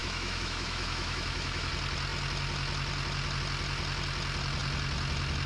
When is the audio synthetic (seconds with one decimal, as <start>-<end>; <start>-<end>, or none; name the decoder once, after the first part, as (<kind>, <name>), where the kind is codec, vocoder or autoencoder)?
0.0-1.7 (autoencoder, DAC-VAE)